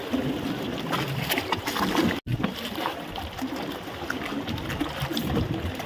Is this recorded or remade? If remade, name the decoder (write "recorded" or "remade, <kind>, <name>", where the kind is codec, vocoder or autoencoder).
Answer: recorded